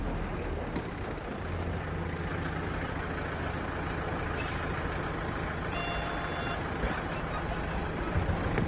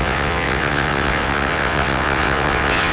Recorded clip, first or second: first